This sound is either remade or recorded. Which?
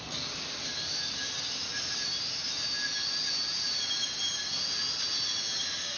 recorded